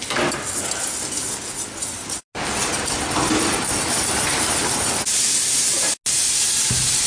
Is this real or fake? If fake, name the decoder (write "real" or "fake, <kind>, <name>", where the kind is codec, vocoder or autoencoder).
real